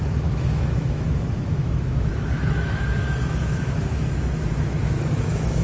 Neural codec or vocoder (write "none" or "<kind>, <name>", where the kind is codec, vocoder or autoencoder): autoencoder, DAC-VAE